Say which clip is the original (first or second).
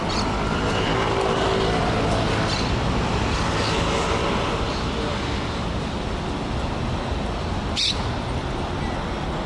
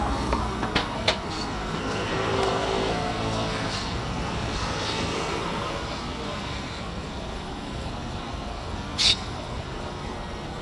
first